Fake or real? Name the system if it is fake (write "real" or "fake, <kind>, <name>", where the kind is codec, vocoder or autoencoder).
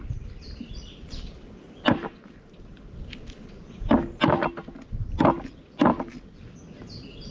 real